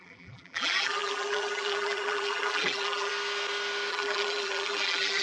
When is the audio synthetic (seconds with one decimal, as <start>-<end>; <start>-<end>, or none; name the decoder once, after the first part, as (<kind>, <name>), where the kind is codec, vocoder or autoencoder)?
0.0-3.1 (vocoder, BigVGAN v2); 3.9-5.2